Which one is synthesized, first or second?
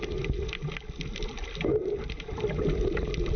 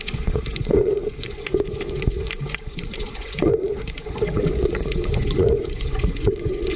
second